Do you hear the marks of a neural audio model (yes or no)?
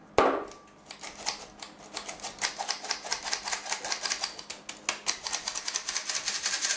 no